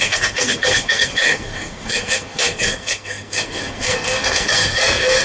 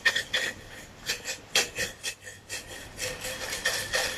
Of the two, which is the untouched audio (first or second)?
second